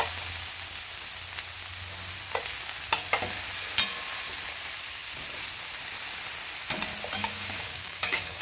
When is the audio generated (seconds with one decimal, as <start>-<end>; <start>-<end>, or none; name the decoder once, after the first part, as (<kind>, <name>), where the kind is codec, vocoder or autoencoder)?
7.2-8.4 (codec, DAC)